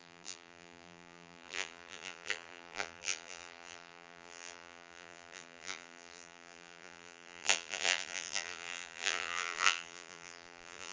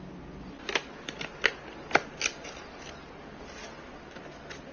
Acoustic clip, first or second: second